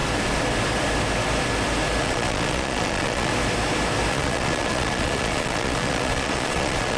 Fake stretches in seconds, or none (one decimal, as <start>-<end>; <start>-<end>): 2.0-3.3; 4.1-7.0